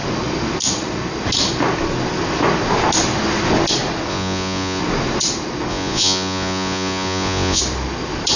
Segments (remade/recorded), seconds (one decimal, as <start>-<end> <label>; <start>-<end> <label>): 0.0-4.1 recorded; 4.1-4.8 remade; 4.8-5.7 recorded; 5.7-7.6 remade; 7.6-8.4 recorded